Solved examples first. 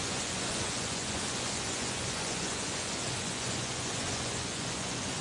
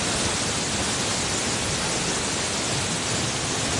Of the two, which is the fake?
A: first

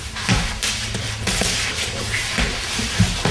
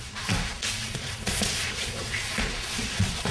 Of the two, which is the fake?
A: second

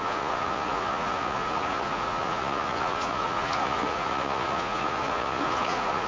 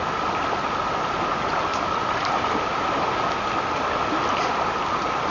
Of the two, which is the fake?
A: first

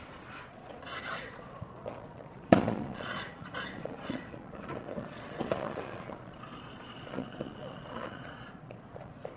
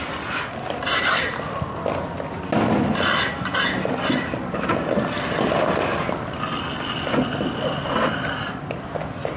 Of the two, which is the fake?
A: first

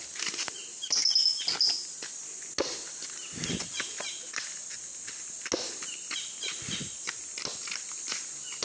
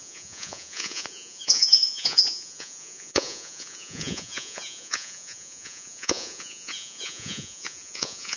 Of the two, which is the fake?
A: second